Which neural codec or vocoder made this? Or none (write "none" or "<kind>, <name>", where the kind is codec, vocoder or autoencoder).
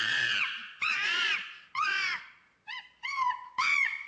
vocoder, Vocos